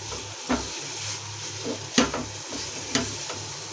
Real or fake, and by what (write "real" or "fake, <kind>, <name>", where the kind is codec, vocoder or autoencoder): real